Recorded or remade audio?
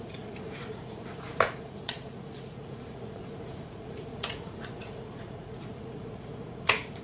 remade